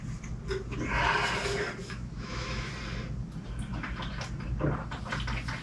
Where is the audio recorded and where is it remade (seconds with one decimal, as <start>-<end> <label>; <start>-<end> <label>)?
0.0-1.8 recorded; 1.8-2.7 remade; 2.7-5.6 recorded